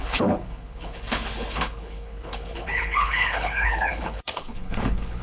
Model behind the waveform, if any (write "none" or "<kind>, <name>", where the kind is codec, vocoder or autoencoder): codec, HILCodec